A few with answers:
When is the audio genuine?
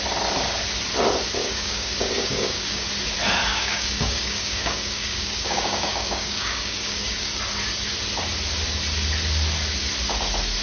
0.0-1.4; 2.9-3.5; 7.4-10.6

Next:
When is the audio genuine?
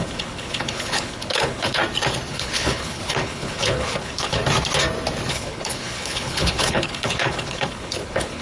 1.8-2.3; 4.4-5.3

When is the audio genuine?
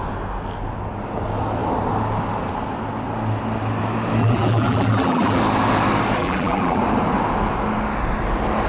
0.0-4.2; 5.4-6.2; 6.8-8.7